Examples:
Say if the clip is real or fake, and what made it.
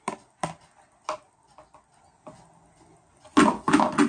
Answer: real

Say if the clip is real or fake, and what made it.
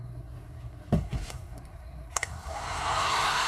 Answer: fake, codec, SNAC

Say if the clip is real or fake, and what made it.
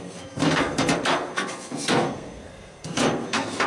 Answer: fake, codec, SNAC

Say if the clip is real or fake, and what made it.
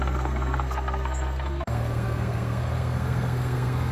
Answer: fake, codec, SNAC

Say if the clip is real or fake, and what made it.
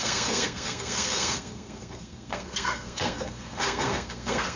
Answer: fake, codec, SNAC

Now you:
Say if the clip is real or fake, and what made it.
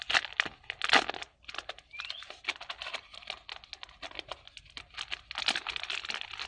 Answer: real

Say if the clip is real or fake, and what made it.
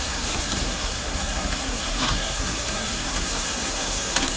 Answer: fake, codec, SNAC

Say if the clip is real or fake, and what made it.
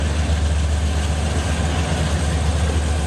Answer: real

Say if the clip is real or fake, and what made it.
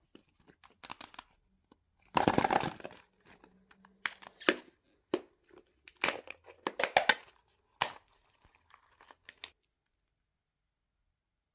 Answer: real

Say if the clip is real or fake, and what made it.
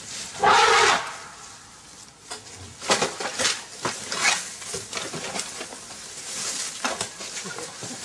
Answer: real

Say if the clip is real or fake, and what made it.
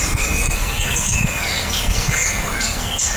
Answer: fake, codec, SNAC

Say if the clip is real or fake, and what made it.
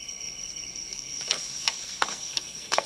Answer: fake, codec, SNAC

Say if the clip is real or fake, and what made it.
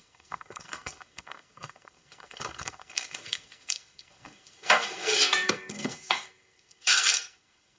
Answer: fake, codec, SNAC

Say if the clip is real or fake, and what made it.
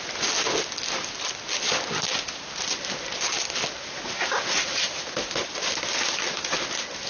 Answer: real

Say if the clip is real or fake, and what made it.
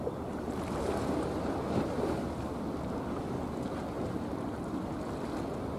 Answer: real